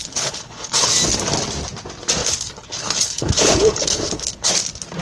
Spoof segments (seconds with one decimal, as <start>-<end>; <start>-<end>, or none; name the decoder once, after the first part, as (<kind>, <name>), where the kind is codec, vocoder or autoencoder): 0.0-0.9 (codec, HILCodec); 2.2-4.5